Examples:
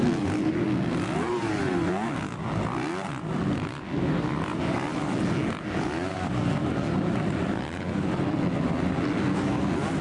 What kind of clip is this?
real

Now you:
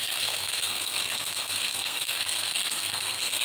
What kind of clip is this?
fake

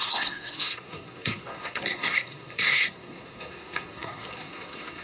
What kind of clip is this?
fake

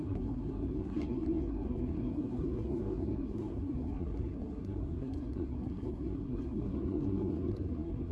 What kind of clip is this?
fake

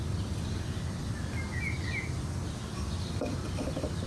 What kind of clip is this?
real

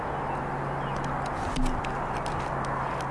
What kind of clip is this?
real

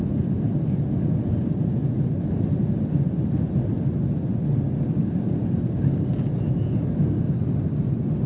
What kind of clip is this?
real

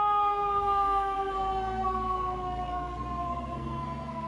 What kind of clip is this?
fake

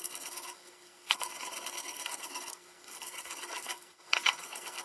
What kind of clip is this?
fake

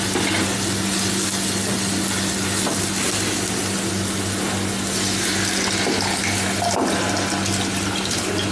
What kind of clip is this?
real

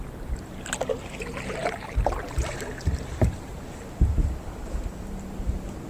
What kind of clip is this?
real